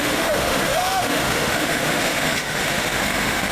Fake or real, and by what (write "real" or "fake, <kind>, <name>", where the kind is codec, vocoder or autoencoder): fake, autoencoder, DAC-VAE